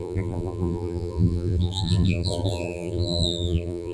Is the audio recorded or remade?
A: remade